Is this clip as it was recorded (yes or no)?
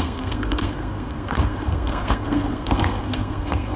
no